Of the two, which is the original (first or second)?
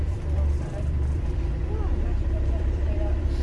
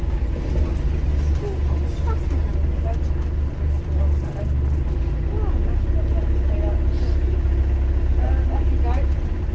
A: second